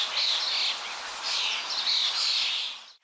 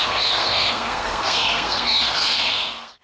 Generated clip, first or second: second